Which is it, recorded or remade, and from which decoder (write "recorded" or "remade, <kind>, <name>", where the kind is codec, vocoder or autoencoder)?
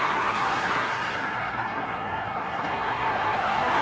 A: remade, codec, SNAC